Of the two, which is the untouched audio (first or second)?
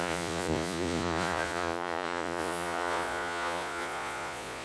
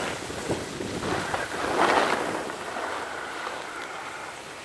second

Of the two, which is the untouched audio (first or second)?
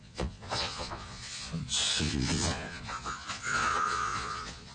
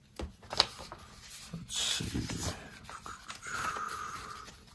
second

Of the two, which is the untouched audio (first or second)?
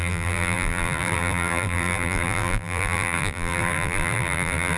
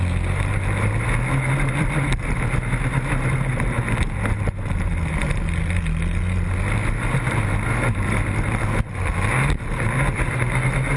second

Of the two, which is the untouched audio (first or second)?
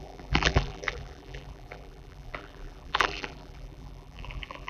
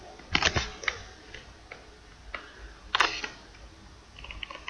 second